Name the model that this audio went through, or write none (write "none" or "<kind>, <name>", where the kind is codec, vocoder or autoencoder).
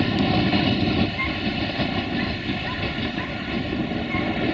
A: none